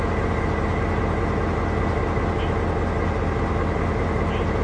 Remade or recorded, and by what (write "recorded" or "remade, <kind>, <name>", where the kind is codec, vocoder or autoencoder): recorded